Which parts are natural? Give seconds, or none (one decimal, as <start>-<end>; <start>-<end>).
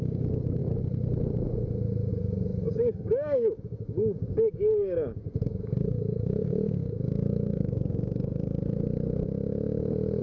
0.6-2.1; 8.6-10.2